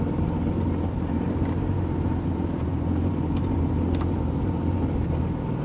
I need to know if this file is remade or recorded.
remade